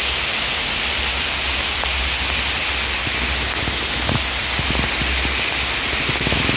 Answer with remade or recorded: recorded